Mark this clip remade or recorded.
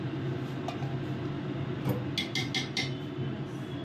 recorded